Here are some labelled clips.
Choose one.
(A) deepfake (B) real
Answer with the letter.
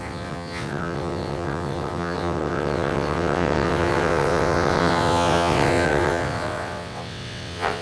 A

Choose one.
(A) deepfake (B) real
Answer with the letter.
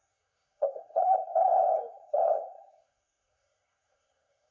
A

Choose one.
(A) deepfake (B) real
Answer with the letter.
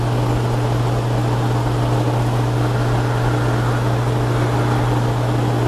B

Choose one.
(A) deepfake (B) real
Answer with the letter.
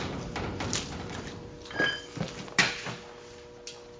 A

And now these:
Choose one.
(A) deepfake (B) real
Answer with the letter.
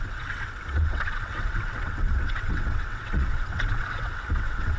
A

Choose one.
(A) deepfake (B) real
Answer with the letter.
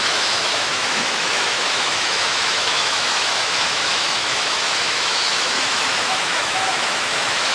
A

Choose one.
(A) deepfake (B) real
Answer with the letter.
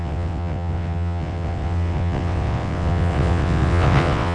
A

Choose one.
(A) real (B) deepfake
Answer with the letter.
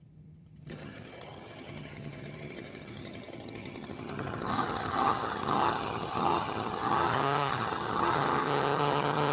B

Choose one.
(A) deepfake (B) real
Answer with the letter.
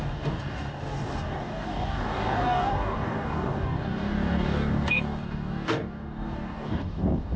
A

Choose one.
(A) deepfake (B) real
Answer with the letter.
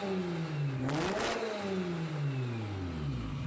B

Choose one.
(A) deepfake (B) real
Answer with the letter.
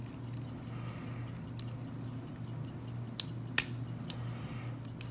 B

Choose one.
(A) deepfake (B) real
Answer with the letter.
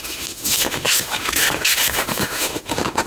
A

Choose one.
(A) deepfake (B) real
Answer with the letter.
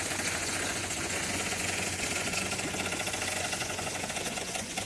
A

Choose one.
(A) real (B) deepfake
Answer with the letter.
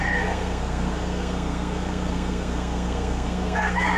B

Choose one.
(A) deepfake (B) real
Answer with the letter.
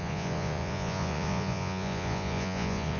A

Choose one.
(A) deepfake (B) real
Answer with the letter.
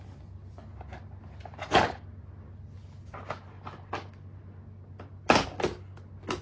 B